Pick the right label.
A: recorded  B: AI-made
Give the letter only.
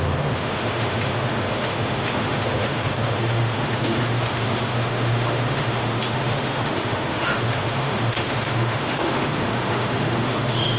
B